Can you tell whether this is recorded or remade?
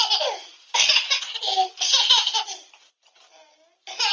recorded